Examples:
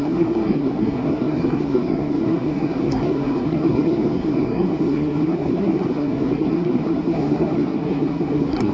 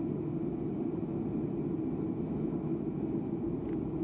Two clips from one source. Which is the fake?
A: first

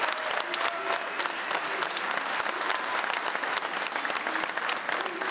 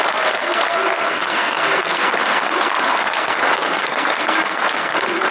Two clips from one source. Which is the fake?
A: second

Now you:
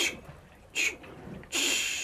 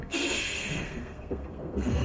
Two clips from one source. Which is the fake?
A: second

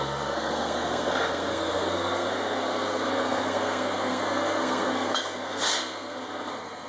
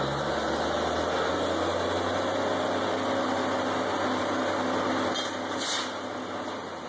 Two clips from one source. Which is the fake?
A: first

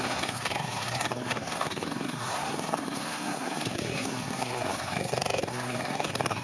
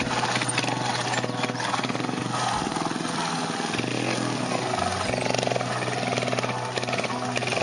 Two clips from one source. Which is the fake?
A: first